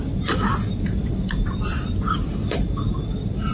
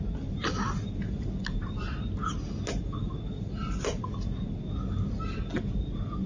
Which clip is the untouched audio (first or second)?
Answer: second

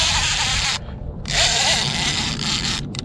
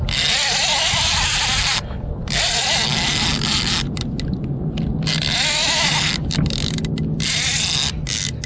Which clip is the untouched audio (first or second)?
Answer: second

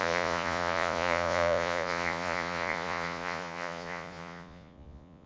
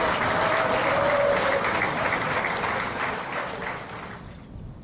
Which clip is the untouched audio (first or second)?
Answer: second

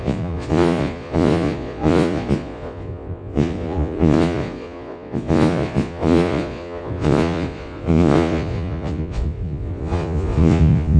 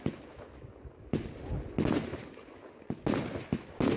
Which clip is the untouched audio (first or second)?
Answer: second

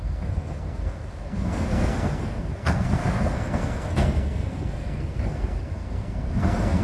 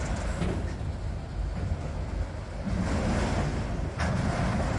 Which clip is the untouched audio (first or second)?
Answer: second